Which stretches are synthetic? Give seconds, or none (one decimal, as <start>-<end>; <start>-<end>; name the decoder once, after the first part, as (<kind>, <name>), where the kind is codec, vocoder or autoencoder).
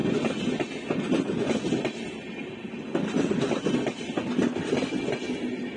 none